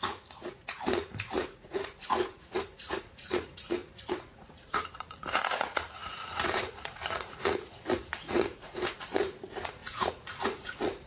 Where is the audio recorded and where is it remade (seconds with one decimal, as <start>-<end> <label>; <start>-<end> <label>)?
0.0-11.1 remade